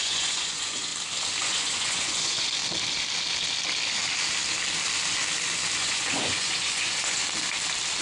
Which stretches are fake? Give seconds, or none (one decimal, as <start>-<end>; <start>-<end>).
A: 0.0-0.9; 1.4-2.6; 5.8-7.2